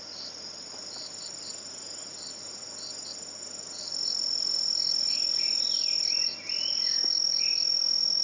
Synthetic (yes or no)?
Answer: yes